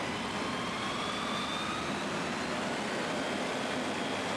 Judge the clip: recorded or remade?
recorded